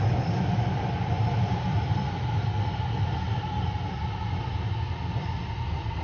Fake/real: fake